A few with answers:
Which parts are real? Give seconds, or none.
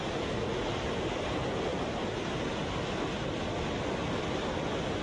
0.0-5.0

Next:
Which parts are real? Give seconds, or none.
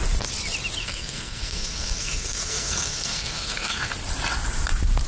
0.0-0.8; 3.9-5.1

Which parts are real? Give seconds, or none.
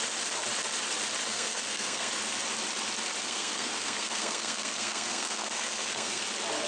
0.0-1.3; 2.1-3.2; 6.2-6.7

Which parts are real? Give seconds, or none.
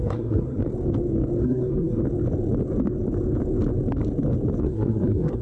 0.6-1.4; 2.0-4.6